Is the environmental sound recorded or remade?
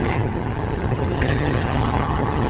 remade